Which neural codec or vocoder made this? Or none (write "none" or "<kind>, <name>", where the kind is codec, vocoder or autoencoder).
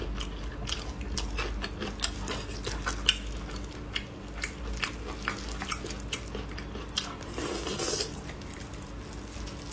none